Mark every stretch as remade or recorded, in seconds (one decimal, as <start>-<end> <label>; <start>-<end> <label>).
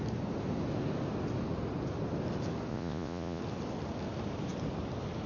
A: 0.0-2.7 recorded; 2.7-3.4 remade; 3.4-5.3 recorded